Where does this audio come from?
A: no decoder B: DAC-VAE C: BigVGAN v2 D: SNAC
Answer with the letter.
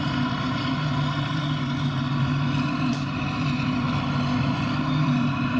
C